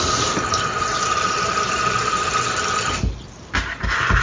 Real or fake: real